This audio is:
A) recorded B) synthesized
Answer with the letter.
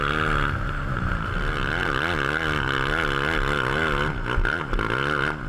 A